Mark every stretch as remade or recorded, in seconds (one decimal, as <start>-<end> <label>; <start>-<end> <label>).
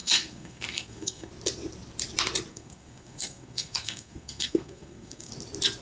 0.0-1.3 remade; 1.3-2.5 recorded; 2.5-5.3 remade; 5.3-5.8 recorded